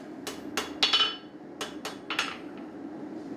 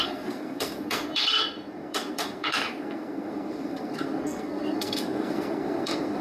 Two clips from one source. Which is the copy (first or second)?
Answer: second